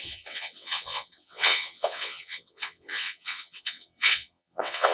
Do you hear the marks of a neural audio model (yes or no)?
yes